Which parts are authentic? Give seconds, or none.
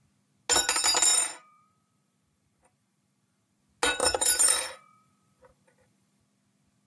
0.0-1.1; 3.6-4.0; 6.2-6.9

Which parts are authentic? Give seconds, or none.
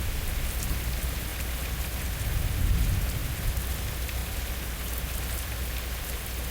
0.0-6.5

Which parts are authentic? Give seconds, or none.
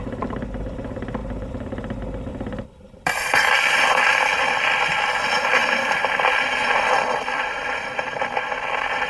none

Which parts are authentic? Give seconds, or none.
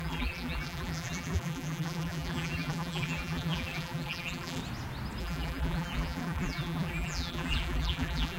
4.6-5.2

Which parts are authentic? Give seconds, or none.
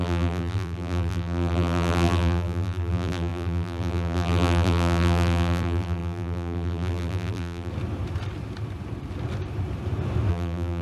7.7-10.3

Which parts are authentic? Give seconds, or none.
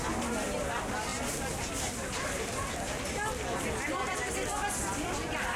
0.0-1.1; 4.5-5.6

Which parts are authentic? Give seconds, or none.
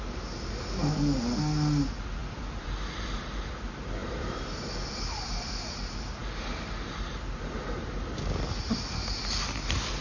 0.0-2.2; 3.5-4.0; 5.5-10.0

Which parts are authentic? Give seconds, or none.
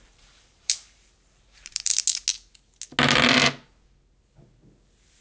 1.9-5.2